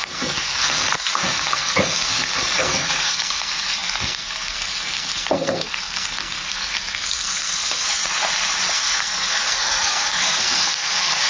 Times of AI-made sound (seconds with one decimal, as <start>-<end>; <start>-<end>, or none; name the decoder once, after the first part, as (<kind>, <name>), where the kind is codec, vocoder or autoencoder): 0.0-8.0 (codec, SNAC); 8.7-11.3